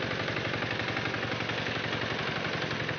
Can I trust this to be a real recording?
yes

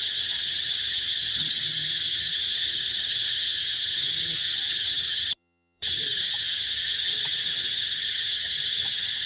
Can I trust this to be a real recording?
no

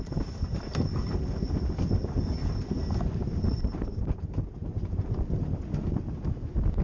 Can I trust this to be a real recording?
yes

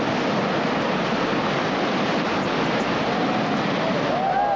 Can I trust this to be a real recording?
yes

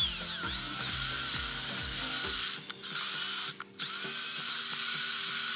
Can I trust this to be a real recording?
yes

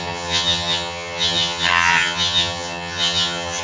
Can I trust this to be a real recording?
no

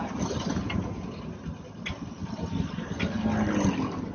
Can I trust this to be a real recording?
yes